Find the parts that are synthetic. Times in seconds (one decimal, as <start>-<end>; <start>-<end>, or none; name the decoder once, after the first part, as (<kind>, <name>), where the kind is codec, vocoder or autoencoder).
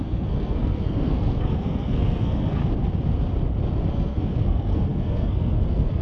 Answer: 0.0-2.6 (codec, SNAC); 3.9-6.0